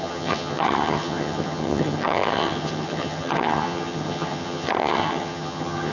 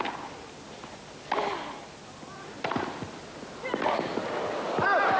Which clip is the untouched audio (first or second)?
second